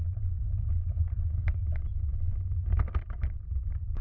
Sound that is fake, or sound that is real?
real